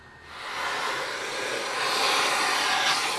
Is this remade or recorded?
recorded